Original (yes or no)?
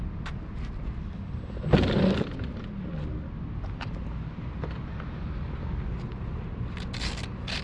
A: yes